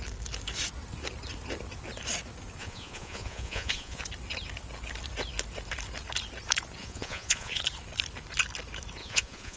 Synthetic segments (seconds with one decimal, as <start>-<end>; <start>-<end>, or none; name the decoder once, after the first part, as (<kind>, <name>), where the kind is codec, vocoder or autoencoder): 2.6-4.0 (vocoder, Vocos); 6.8-7.6; 9.0-9.6